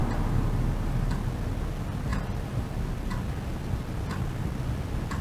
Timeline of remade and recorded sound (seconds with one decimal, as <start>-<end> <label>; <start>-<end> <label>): 0.0-1.1 remade; 1.1-2.1 recorded; 2.1-2.7 remade; 2.7-5.2 recorded